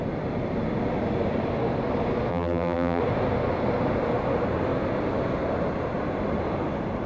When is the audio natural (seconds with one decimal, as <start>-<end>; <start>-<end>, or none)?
0.0-2.3; 3.0-7.1